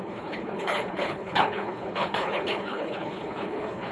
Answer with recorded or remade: remade